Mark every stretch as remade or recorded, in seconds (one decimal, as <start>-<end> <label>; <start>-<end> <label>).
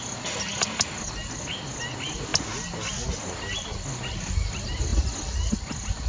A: 0.0-6.1 recorded